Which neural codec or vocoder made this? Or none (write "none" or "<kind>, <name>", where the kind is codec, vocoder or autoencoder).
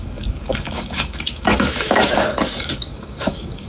codec, DAC